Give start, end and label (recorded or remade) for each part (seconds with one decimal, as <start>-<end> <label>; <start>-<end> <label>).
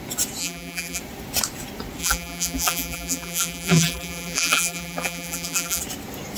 0.0-0.4 recorded; 0.4-1.0 remade; 1.0-2.0 recorded; 2.0-5.8 remade; 5.8-6.4 recorded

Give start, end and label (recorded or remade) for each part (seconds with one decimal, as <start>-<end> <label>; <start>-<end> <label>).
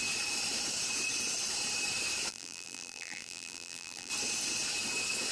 0.0-2.3 recorded; 2.3-4.1 remade; 4.1-5.3 recorded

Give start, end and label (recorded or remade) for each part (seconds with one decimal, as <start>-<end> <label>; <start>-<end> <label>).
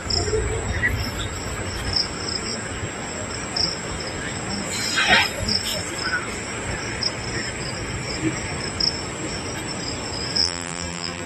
0.0-10.4 recorded; 10.4-11.3 remade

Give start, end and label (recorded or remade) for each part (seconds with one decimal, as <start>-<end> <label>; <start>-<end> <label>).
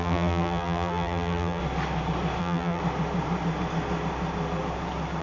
0.0-1.6 remade; 1.6-2.4 recorded; 2.4-2.8 remade; 2.8-5.2 recorded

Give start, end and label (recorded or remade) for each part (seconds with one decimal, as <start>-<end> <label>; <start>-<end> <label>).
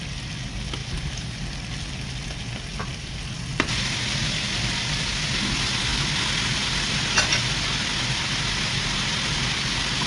0.0-0.8 recorded; 0.8-1.4 remade; 1.4-2.9 recorded; 2.9-3.7 remade; 3.7-10.1 recorded